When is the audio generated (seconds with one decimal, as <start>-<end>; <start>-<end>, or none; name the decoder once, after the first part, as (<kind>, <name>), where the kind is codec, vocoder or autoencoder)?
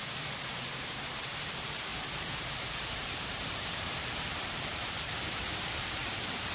4.3-6.5 (vocoder, BigVGAN v2)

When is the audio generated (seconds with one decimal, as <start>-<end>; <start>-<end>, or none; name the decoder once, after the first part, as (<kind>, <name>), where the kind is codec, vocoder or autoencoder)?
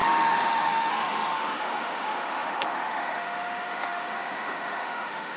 0.0-5.4 (autoencoder, DAC-VAE)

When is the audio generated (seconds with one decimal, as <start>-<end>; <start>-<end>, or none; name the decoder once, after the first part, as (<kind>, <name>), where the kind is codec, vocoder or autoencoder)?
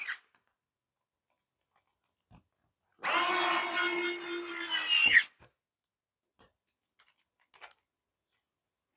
none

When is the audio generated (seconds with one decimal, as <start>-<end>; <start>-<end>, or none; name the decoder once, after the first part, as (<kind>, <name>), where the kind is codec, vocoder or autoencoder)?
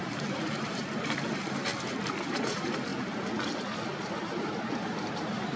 0.0-1.7 (vocoder, BigVGAN v2); 2.3-2.9; 4.0-5.6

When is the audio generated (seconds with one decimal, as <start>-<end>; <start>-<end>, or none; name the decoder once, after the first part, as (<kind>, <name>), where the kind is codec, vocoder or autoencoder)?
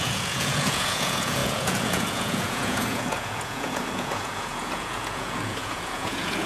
0.0-6.5 (vocoder, Vocos)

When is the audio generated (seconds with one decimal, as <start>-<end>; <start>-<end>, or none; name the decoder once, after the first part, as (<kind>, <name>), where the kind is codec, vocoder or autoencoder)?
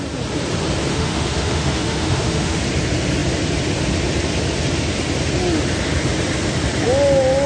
0.9-2.6 (autoencoder, DAC-VAE)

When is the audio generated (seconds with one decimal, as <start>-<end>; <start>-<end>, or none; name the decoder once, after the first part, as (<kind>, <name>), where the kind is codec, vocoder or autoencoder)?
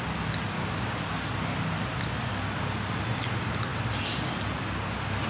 3.7-4.2 (vocoder, BigVGAN v2)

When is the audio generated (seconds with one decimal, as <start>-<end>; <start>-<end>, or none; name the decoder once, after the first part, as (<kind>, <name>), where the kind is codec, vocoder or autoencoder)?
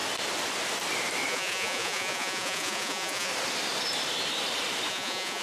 1.3-3.3 (vocoder, Vocos); 4.9-5.4